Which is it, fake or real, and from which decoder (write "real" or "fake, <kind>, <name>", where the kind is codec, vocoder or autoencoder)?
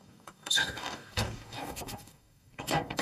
fake, codec, DAC